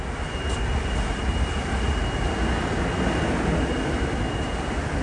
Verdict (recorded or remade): recorded